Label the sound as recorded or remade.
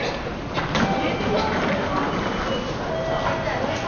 recorded